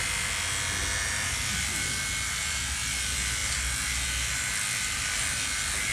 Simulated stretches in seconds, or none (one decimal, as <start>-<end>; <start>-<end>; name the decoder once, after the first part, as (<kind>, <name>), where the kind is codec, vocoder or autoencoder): none